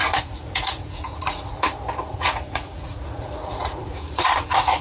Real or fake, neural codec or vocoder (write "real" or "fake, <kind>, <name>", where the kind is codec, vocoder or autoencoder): fake, vocoder, Vocos